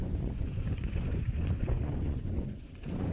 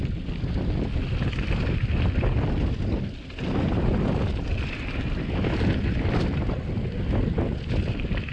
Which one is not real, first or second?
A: first